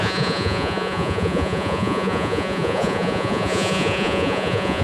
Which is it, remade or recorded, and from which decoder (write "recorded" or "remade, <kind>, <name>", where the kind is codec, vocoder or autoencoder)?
remade, vocoder, Vocos